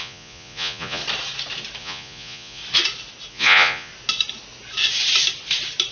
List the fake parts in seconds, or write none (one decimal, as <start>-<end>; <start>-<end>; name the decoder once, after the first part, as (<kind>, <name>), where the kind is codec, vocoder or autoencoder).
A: 0.0-1.0 (vocoder, Vocos); 1.8-2.6; 3.3-3.9